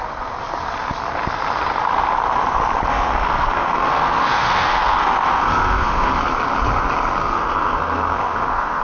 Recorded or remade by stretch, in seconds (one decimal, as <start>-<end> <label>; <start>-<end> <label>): 0.0-2.9 recorded; 2.9-6.2 remade; 6.2-7.2 recorded; 7.2-8.8 remade